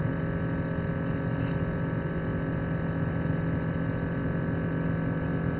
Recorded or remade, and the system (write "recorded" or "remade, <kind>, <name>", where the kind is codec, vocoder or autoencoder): recorded